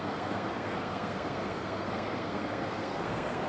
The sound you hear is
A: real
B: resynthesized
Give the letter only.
B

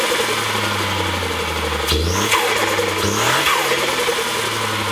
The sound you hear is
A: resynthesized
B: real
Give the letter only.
B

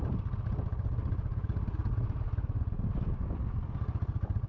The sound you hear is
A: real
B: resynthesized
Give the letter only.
A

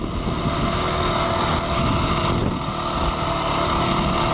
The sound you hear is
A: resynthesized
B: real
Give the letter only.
B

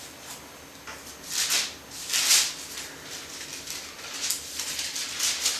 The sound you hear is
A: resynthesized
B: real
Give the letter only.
B